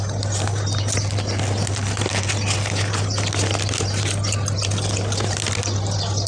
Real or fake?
real